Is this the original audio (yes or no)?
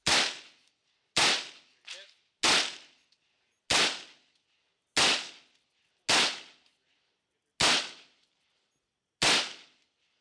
yes